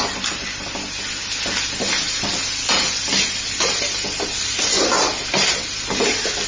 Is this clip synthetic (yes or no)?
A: no